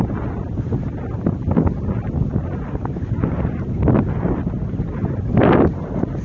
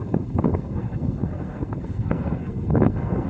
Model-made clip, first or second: second